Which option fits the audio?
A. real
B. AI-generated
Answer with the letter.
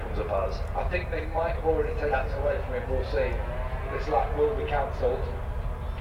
A